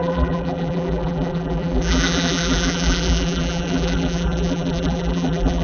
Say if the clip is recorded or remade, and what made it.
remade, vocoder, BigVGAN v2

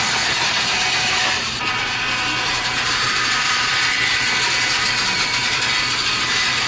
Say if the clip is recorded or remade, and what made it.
remade, vocoder, BigVGAN v2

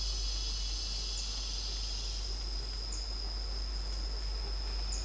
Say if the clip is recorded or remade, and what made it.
recorded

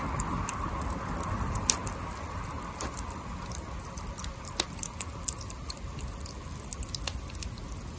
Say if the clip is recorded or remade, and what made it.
recorded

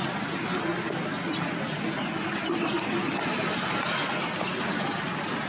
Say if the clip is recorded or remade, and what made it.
recorded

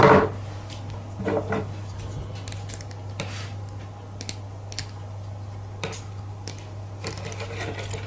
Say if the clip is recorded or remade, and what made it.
recorded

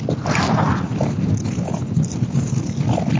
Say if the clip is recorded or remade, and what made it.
recorded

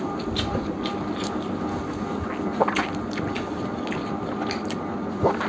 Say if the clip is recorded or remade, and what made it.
recorded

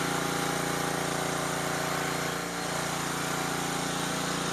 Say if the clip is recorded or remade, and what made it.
recorded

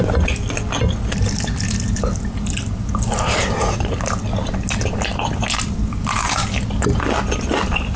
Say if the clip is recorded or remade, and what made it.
recorded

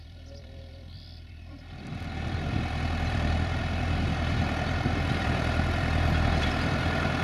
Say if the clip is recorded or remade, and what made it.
remade, vocoder, BigVGAN v2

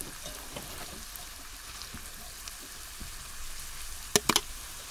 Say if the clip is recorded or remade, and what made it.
recorded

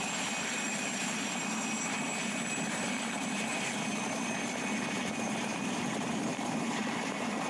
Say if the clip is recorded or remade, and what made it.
remade, vocoder, BigVGAN v2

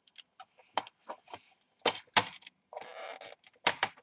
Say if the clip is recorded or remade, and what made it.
recorded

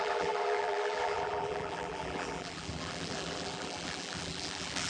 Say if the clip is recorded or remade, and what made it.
remade, vocoder, BigVGAN v2